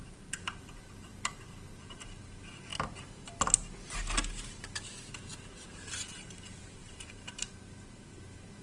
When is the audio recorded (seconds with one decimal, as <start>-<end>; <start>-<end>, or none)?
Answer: 2.7-5.1